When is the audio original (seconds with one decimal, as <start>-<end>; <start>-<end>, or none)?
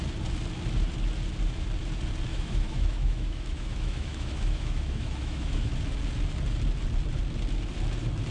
0.0-2.3; 5.7-8.3